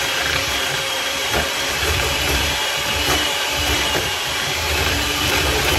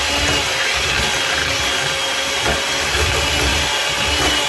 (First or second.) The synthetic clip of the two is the first